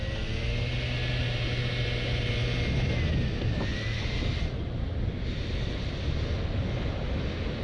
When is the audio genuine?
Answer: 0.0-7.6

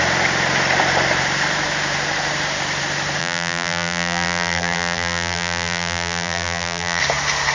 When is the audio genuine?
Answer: 0.0-3.2; 7.0-7.5